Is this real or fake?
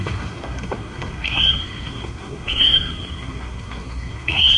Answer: fake